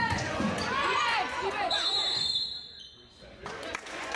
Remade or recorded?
remade